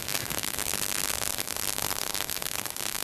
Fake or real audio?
fake